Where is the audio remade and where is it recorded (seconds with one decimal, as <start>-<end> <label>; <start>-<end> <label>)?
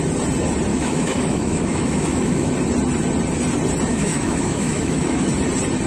0.0-0.7 recorded; 0.7-2.5 remade; 2.5-3.9 recorded; 3.9-5.3 remade; 5.3-5.9 recorded